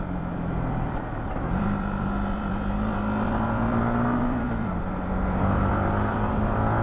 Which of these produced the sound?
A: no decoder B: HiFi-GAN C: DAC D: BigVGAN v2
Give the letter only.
D